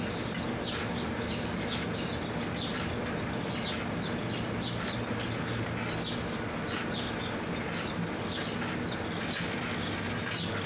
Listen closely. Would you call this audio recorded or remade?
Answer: recorded